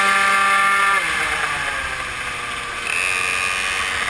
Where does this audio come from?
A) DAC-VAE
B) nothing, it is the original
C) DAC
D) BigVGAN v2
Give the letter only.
B